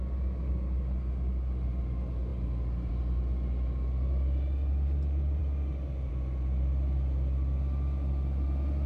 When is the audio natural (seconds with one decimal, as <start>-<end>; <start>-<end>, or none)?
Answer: 0.0-8.9